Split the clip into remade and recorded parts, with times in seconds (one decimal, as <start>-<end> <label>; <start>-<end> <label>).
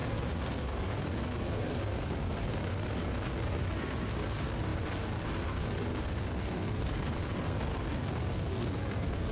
0.0-9.3 remade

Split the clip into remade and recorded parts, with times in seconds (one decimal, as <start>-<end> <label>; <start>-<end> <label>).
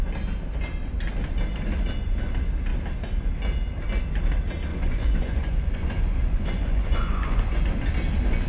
0.0-4.7 recorded; 4.7-7.6 remade; 7.6-8.5 recorded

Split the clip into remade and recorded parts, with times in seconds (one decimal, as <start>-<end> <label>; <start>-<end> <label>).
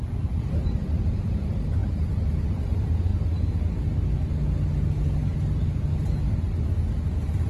0.0-3.1 remade; 3.1-7.1 recorded; 7.1-7.5 remade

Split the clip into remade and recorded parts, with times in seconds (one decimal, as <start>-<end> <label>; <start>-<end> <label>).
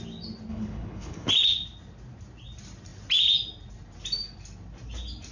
0.0-0.5 recorded; 0.5-1.3 remade; 1.3-5.3 recorded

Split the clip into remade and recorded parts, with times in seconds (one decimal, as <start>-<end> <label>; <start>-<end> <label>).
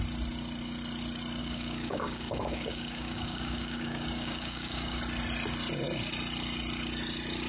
0.0-1.4 recorded; 1.4-5.0 remade; 5.0-7.5 recorded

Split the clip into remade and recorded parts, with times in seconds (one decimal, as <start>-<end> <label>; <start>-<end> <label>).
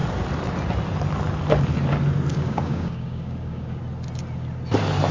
0.0-2.3 recorded; 2.3-3.8 remade; 3.8-5.1 recorded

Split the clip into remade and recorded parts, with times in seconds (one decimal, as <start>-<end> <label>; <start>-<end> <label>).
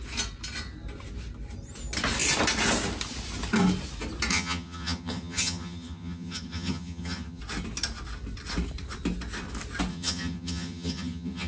0.0-4.3 recorded; 4.3-7.4 remade; 7.4-9.9 recorded; 9.9-11.5 remade